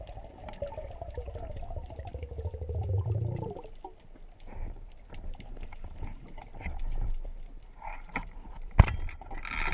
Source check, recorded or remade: recorded